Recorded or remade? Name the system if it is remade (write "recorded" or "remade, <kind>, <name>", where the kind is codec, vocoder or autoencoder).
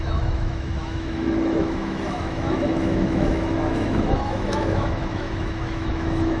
remade, autoencoder, DAC-VAE